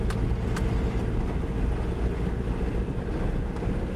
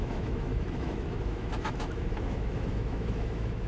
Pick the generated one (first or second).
second